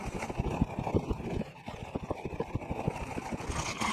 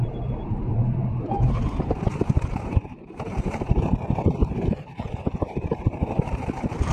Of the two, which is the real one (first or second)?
first